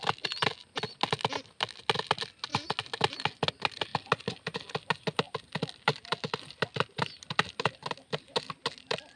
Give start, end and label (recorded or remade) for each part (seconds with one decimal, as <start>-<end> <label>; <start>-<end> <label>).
0.0-9.2 recorded